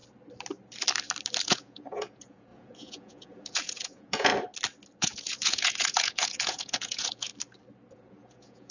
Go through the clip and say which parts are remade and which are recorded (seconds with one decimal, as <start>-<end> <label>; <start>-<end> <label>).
0.0-1.4 recorded; 1.4-4.3 remade; 4.3-5.0 recorded; 5.0-7.3 remade; 7.3-7.9 recorded; 7.9-8.7 remade